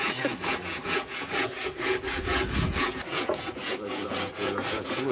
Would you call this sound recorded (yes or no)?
no